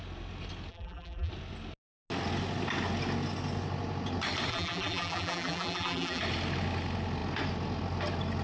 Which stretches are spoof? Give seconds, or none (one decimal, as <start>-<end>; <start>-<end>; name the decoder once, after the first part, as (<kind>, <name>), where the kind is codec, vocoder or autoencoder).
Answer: 0.7-1.3 (vocoder, BigVGAN v2); 4.5-6.2